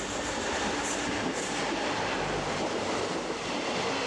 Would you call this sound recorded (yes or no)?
yes